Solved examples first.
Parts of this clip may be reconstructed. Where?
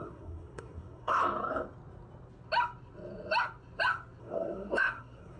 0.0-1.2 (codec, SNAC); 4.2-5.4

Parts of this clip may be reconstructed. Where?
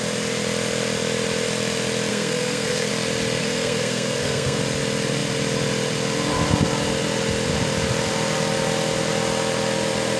2.1-2.9 (codec, SNAC); 3.4-4.6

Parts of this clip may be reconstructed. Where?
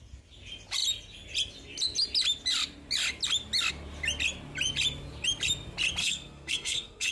6.0-7.1 (codec, SNAC)